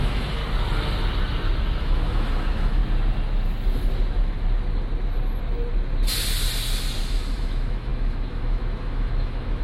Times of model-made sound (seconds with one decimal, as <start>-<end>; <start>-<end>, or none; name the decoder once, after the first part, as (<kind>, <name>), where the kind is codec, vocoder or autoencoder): 0.0-0.4 (autoencoder, DAC-VAE); 1.8-2.8; 7.0-9.6